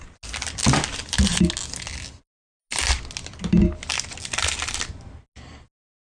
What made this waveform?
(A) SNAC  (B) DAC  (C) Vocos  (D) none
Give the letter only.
D